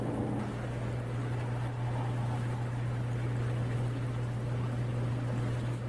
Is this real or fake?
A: real